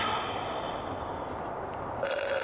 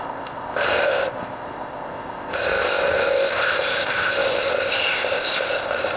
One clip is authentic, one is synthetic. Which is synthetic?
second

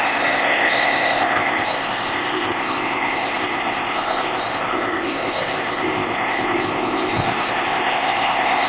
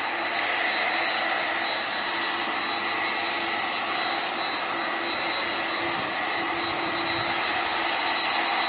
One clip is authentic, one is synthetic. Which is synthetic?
first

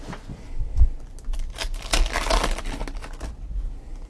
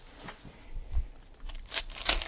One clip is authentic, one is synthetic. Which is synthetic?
second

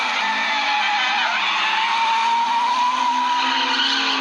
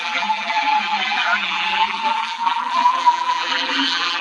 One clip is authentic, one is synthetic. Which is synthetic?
second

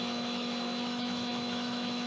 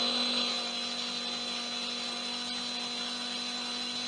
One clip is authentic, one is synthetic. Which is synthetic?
first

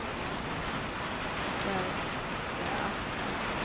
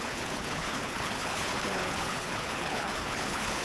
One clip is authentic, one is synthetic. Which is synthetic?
second